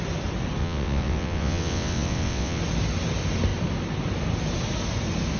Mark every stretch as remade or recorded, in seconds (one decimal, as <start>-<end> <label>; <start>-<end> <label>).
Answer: 0.0-0.6 recorded; 0.6-2.6 remade; 2.6-5.4 recorded